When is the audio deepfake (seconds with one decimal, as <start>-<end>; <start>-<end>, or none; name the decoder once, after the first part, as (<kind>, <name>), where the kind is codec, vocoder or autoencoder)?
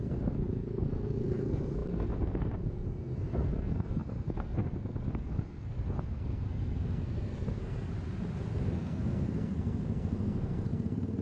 0.0-7.9 (codec, SNAC); 8.5-11.2